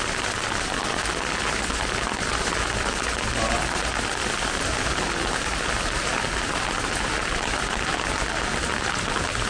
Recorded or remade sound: recorded